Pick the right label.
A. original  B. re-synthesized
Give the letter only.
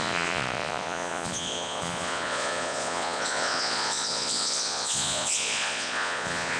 B